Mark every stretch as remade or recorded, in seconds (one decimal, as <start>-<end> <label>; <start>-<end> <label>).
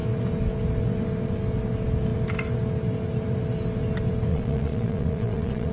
0.0-4.3 recorded; 4.3-5.7 remade